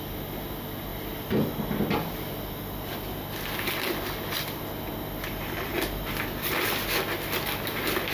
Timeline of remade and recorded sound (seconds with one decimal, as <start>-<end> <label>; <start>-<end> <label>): 0.0-8.1 recorded